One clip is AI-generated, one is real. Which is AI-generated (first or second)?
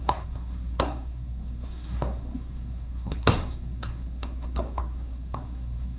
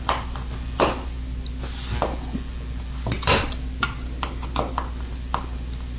first